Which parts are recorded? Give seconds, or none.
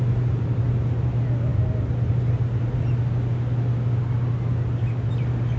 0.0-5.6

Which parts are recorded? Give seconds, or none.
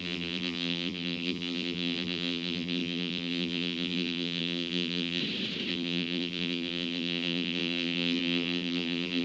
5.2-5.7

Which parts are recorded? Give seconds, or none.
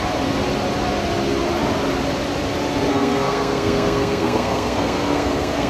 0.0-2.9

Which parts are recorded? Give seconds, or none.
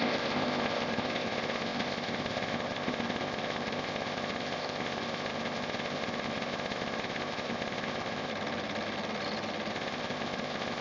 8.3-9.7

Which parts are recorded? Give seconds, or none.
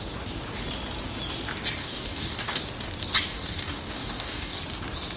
0.0-1.8; 2.6-3.3; 4.6-5.2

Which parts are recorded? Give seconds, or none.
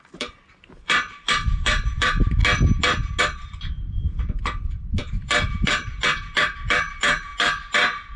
2.4-3.2; 7.3-8.2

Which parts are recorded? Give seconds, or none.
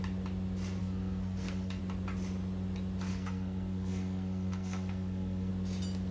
0.0-0.8; 1.8-3.1; 5.5-6.1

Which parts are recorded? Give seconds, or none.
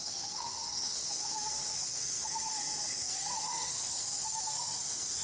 none